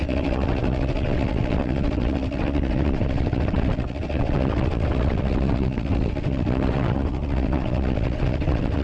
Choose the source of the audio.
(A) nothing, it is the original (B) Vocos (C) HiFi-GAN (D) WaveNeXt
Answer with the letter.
D